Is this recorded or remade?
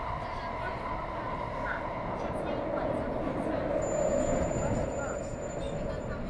recorded